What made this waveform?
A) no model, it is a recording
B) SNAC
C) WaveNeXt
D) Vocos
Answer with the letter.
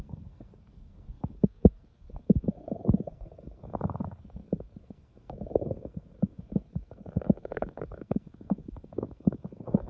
B